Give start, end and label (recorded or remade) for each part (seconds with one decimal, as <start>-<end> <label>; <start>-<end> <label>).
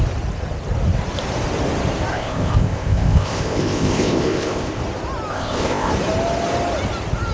0.0-2.1 recorded; 2.1-4.8 remade; 4.8-5.3 recorded; 5.3-5.9 remade; 5.9-7.3 recorded